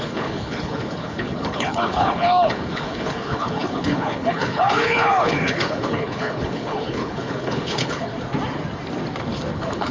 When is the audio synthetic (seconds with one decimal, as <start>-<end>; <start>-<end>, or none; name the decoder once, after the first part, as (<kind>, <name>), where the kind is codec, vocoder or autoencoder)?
0.0-8.1 (codec, HILCodec); 9.5-9.9